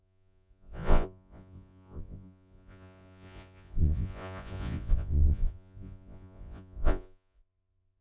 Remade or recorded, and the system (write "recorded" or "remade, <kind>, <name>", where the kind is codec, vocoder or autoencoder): remade, vocoder, Vocos